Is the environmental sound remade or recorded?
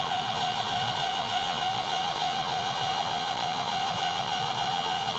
remade